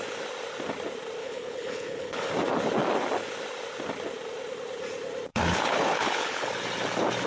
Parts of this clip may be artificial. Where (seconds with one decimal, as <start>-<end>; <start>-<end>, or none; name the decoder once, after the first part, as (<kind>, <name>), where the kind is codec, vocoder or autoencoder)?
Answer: 1.2-2.3 (codec, HILCodec); 5.3-6.5